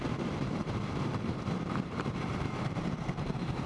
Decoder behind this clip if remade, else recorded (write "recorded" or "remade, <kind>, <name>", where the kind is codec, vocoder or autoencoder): remade, vocoder, BigVGAN v2